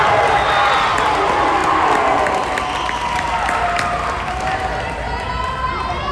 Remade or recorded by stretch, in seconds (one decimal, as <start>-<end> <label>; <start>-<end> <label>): 0.0-6.1 recorded